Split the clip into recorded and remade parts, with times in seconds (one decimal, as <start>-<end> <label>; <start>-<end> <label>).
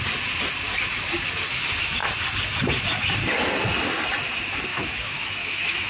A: 0.0-4.7 recorded; 4.7-5.9 remade